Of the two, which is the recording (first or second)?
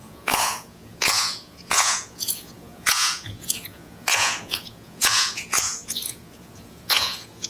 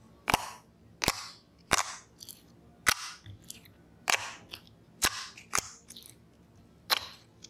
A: second